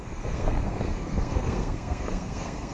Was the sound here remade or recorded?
remade